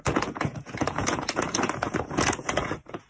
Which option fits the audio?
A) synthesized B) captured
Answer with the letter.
A